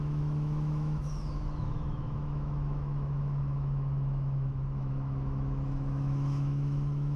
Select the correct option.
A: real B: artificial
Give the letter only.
B